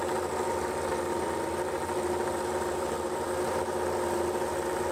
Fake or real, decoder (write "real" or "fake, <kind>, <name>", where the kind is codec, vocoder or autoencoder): real